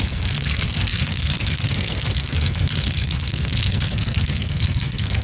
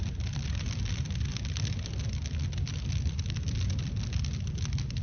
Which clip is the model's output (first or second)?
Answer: first